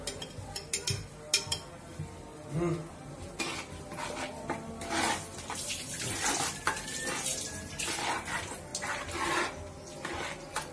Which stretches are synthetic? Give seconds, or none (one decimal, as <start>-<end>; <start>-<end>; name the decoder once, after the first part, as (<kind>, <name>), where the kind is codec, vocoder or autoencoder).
none